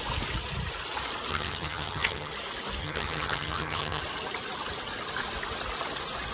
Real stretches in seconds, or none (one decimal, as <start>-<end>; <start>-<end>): 0.0-1.3; 2.3-2.8; 4.0-6.3